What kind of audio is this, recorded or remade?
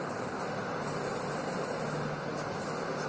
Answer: remade